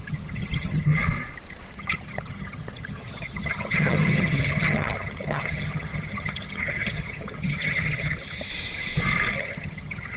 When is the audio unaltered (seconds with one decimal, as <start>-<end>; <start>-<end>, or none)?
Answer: 1.0-1.7; 8.5-9.3

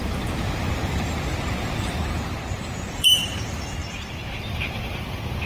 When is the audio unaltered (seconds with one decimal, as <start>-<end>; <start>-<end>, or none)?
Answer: 3.8-4.4

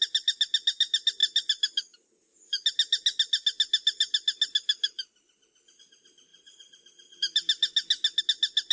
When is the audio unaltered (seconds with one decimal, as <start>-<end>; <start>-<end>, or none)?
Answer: 0.0-8.7